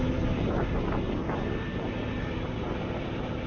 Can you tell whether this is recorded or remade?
recorded